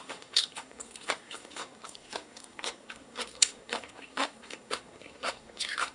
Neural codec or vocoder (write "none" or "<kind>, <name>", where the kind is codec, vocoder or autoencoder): codec, SNAC